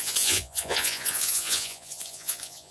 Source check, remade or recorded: remade